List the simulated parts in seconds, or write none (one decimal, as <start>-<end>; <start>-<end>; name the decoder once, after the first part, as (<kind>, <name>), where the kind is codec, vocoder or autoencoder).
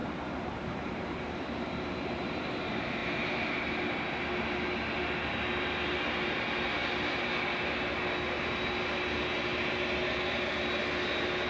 0.0-2.6 (vocoder, BigVGAN v2)